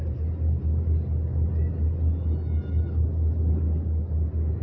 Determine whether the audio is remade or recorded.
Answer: recorded